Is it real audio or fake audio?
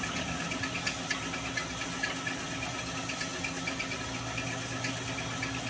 real